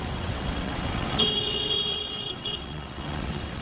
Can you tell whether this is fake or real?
fake